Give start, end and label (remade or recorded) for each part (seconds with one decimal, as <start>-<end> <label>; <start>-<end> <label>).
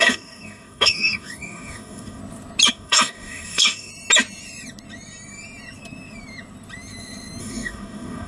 0.0-2.2 remade; 2.2-2.7 recorded; 2.7-3.9 remade; 3.9-7.4 recorded; 7.4-8.3 remade